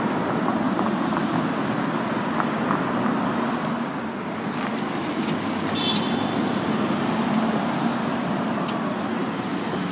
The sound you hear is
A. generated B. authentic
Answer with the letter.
B